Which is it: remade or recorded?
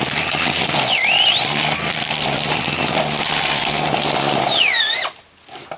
recorded